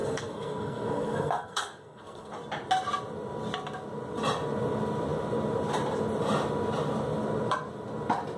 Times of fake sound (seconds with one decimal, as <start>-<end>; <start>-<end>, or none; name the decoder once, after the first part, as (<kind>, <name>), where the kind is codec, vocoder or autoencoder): 0.0-2.3 (codec, SNAC)